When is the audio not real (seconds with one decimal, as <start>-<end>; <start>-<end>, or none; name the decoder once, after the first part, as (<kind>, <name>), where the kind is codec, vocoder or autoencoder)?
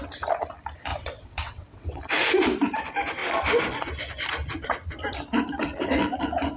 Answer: 0.9-2.0 (vocoder, WaveNeXt)